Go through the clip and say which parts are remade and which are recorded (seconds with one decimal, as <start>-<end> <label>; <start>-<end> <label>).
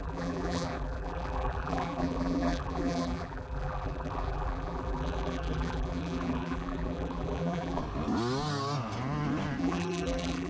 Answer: 0.0-7.8 remade; 7.8-9.6 recorded; 9.6-10.5 remade